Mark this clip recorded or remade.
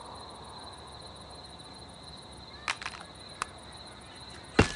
recorded